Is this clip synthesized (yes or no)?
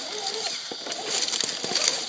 no